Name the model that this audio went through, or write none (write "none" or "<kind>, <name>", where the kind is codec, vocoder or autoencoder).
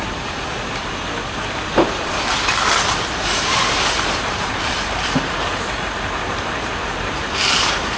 vocoder, BigVGAN v2